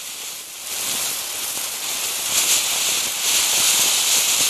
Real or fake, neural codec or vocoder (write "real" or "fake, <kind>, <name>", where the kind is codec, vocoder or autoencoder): real